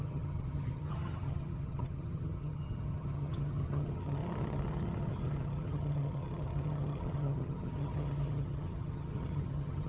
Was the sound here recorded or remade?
remade